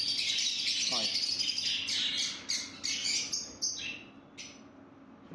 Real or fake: real